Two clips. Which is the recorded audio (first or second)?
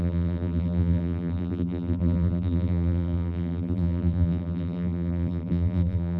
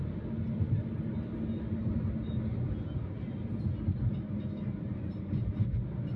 second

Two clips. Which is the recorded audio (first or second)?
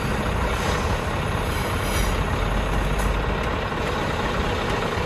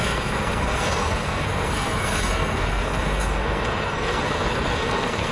first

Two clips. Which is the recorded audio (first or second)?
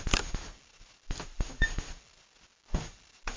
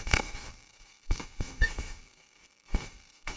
first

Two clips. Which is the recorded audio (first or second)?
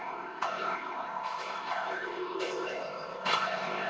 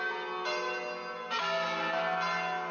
second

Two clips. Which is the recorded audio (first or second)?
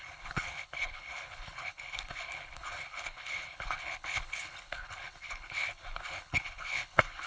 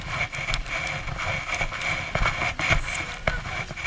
second